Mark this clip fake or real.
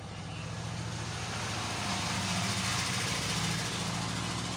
real